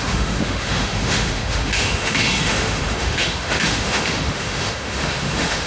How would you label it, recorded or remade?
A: remade